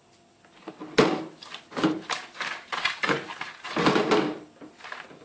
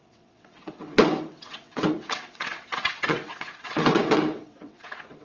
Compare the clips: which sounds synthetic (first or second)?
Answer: second